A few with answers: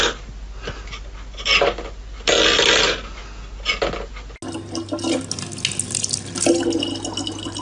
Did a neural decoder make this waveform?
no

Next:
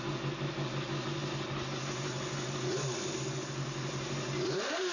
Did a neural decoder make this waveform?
no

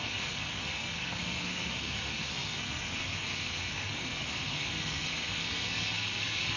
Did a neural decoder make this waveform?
yes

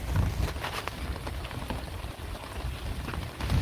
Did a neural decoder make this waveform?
no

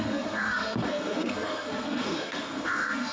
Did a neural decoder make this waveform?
yes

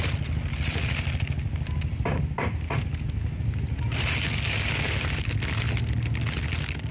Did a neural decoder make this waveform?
no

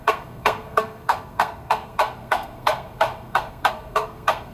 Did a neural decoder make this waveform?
yes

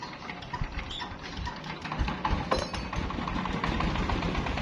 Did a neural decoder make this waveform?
no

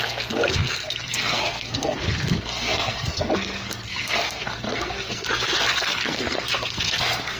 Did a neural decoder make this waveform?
yes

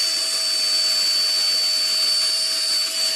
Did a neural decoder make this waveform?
no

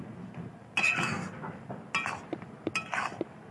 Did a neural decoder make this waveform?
no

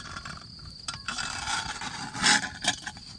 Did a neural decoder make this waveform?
no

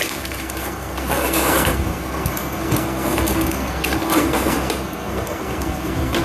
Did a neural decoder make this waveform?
yes